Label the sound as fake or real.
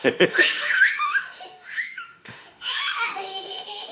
fake